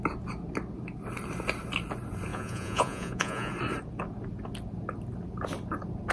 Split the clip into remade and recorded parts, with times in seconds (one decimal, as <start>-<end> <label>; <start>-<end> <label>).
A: 0.0-2.3 recorded; 2.3-3.5 remade; 3.5-6.1 recorded